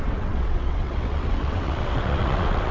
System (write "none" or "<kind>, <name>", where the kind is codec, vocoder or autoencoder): vocoder, WaveNeXt